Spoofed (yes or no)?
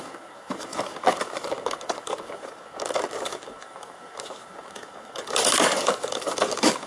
yes